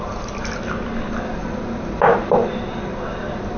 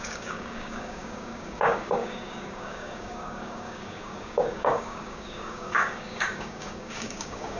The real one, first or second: first